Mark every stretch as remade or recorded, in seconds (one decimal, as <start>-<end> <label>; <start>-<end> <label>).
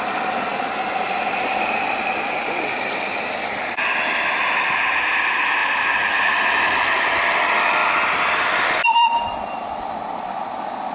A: 0.0-5.6 recorded; 5.6-6.3 remade; 6.3-7.8 recorded; 7.8-10.5 remade; 10.5-10.9 recorded